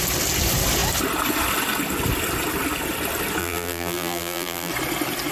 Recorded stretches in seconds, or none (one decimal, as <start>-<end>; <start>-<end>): 0.0-3.4; 4.7-5.3